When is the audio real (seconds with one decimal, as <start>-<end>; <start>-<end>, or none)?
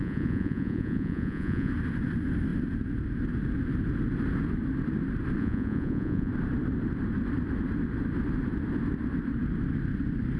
1.7-5.4; 6.3-10.4